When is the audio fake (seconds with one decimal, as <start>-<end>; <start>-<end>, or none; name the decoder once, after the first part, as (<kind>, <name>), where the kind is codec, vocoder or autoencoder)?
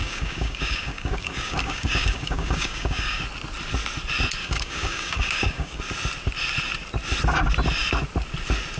0.0-3.2 (codec, DAC); 4.4-5.8